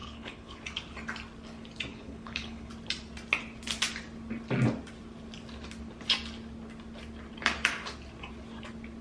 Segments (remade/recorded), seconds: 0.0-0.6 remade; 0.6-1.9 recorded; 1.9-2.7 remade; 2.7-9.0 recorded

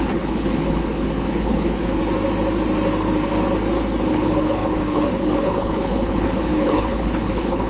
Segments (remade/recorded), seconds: 0.0-2.0 remade; 2.0-4.1 recorded; 4.1-7.7 remade

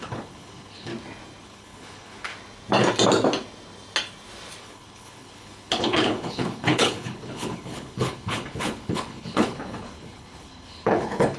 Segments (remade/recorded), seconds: 0.0-0.9 remade; 0.9-1.4 recorded; 1.4-2.3 remade; 2.3-4.6 recorded; 4.6-11.4 remade

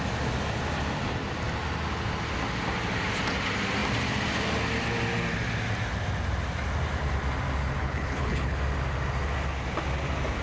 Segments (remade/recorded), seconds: 0.0-7.8 recorded; 7.8-8.6 remade; 8.6-10.4 recorded

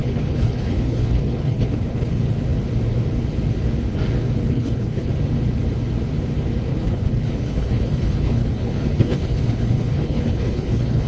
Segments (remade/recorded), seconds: 0.0-2.1 remade; 2.1-4.4 recorded; 4.4-5.1 remade; 5.1-6.7 recorded; 6.7-11.1 remade

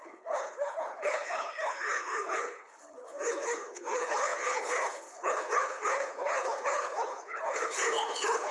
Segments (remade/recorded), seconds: 0.0-8.5 remade

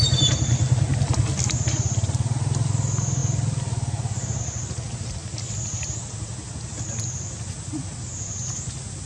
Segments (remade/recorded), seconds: 0.0-9.1 recorded